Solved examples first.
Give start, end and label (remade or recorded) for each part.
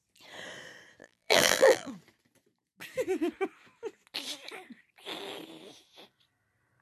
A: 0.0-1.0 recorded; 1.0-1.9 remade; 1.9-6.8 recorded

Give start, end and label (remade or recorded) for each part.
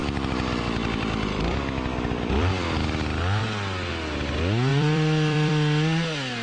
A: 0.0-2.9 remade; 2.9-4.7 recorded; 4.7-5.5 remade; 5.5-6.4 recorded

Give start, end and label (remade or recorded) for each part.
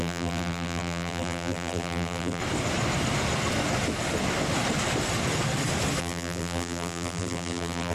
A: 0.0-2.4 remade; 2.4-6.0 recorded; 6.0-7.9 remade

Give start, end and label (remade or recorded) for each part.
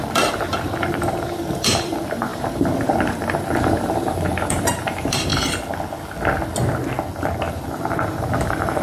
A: 0.0-5.3 remade; 5.3-7.5 recorded; 7.5-8.8 remade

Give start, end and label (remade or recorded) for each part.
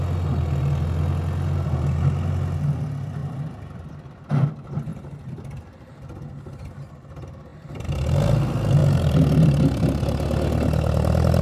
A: 0.0-3.2 recorded; 3.2-4.3 remade; 4.3-4.9 recorded; 4.9-5.6 remade; 5.6-7.5 recorded; 7.5-8.2 remade; 8.2-8.8 recorded; 8.8-10.0 remade; 10.0-11.4 recorded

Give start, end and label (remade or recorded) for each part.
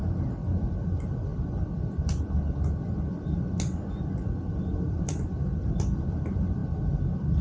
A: 0.0-0.8 recorded; 0.8-1.3 remade; 1.3-4.5 recorded; 4.5-6.6 remade; 6.6-7.4 recorded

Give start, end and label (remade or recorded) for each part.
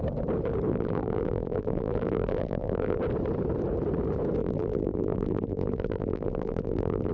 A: 0.0-0.7 recorded; 0.7-3.0 remade; 3.0-4.4 recorded; 4.4-7.1 remade